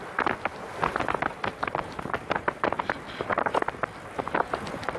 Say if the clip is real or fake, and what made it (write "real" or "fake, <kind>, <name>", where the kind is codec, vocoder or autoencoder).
real